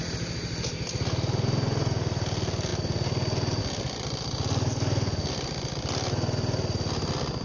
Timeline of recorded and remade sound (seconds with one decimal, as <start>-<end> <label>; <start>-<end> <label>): 0.0-7.4 recorded